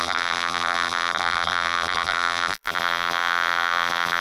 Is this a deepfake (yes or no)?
yes